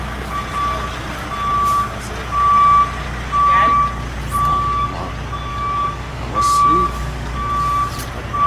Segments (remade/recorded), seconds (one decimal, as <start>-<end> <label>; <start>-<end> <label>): 0.0-4.5 recorded; 4.5-5.1 remade; 5.1-5.5 recorded; 5.5-7.5 remade; 7.5-8.5 recorded